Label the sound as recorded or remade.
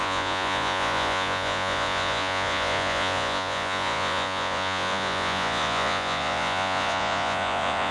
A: remade